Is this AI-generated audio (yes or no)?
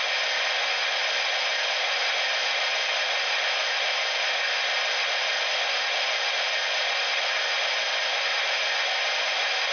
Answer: no